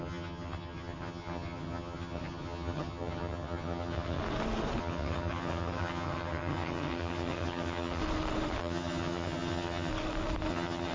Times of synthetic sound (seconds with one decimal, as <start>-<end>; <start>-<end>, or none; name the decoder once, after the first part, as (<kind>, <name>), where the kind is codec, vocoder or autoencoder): 0.0-4.2 (vocoder, HiFi-GAN); 4.8-8.0; 8.6-9.9; 10.5-10.9